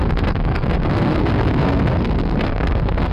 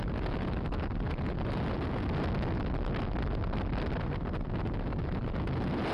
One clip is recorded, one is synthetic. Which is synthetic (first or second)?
first